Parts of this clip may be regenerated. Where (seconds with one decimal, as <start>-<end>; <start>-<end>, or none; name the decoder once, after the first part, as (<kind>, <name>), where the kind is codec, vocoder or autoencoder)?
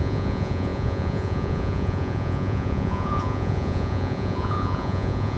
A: 0.0-5.4 (vocoder, Vocos)